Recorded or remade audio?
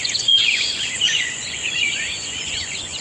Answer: remade